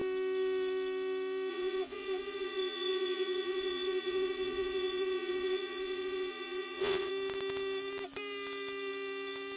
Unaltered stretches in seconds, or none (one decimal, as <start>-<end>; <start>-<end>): 0.0-1.5; 7.1-9.6